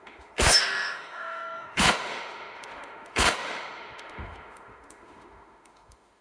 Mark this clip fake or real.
fake